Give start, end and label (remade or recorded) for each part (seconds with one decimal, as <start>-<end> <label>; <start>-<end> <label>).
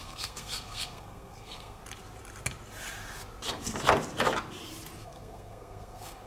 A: 0.0-1.8 remade; 1.8-5.0 recorded; 5.0-6.3 remade